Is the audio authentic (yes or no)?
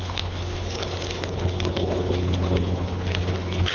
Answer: no